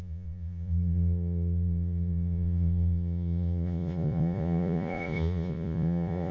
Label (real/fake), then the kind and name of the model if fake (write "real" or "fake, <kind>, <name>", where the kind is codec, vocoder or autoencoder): fake, vocoder, Vocos